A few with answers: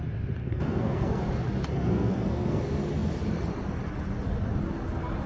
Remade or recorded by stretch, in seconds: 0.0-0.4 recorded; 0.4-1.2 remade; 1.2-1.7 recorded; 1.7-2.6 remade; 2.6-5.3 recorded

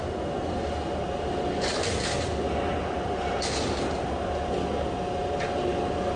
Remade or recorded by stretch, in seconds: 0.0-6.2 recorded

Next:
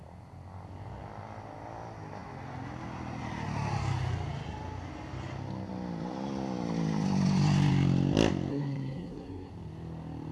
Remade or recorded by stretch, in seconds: 0.0-8.5 recorded; 8.5-9.5 remade; 9.5-10.3 recorded